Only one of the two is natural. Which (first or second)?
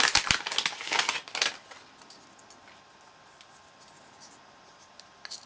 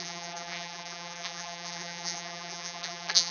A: first